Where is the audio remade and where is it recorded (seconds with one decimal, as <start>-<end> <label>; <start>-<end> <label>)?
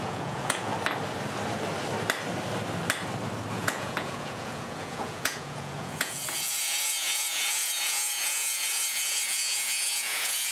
0.0-0.7 remade; 0.7-3.5 recorded; 3.5-10.5 remade